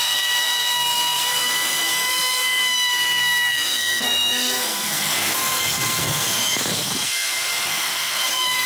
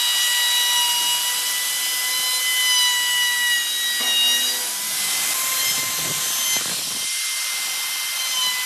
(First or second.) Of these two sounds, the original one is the second